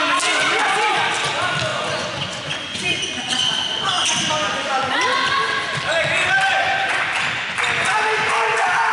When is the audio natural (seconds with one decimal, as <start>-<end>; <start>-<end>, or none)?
0.0-1.7; 3.1-6.5; 7.5-8.9